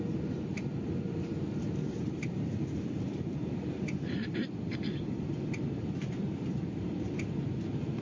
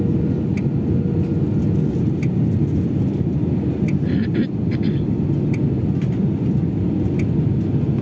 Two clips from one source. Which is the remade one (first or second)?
first